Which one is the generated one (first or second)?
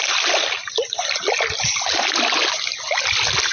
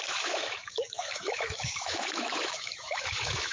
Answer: second